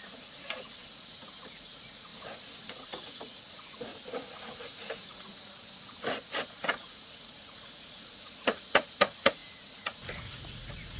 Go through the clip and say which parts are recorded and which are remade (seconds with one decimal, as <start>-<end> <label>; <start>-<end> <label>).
0.0-2.1 remade; 2.1-2.7 recorded; 2.7-3.9 remade; 3.9-4.6 recorded; 4.6-5.6 remade; 5.6-6.6 recorded; 6.6-11.0 remade

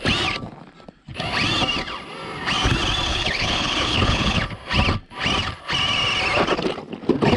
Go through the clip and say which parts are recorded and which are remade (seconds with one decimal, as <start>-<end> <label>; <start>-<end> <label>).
0.0-3.1 recorded; 3.1-4.4 remade; 4.4-7.4 recorded

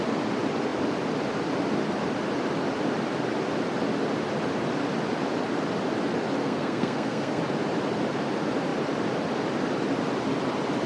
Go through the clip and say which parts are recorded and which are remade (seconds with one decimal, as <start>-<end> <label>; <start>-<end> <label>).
0.0-6.4 recorded; 6.4-7.4 remade; 7.4-10.9 recorded

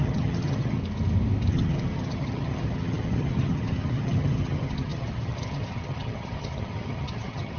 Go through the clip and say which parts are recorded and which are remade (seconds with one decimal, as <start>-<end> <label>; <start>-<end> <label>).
0.0-0.8 remade; 0.8-1.5 recorded; 1.5-7.6 remade